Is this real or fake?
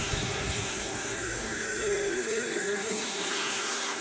fake